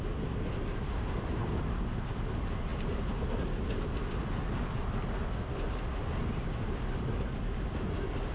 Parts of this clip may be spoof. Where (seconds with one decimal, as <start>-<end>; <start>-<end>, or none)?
none